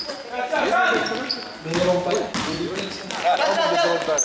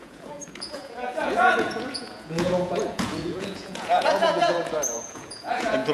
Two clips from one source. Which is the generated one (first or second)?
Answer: second